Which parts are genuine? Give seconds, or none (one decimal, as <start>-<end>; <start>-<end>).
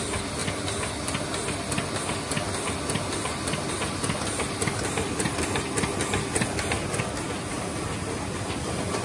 0.0-9.0